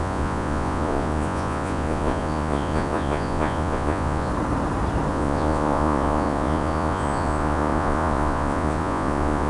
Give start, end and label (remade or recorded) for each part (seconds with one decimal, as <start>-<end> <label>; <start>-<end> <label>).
0.0-4.3 remade; 4.3-5.1 recorded; 5.1-9.5 remade